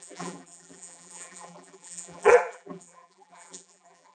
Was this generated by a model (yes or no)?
yes